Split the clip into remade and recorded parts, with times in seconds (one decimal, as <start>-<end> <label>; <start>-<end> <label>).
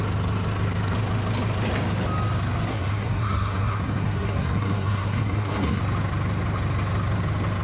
0.0-2.7 recorded; 2.7-5.8 remade; 5.8-7.6 recorded